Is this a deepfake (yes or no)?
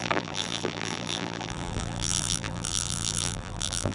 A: yes